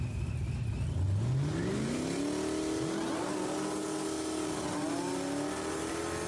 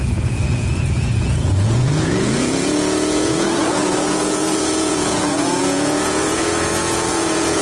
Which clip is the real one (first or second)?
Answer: first